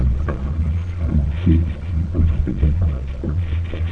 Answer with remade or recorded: remade